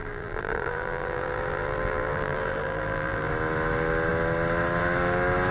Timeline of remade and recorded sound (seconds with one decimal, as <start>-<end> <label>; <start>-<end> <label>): 0.0-3.3 remade; 3.3-5.5 recorded